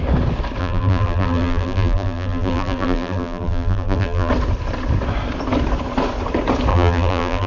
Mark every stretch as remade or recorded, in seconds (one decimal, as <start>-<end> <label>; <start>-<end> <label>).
0.0-0.6 recorded; 0.6-4.3 remade; 4.3-6.7 recorded; 6.7-7.5 remade